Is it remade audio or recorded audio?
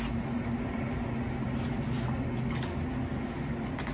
recorded